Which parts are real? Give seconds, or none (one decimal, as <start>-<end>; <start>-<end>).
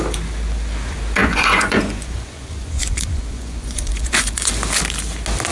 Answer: 0.0-1.2; 4.5-5.5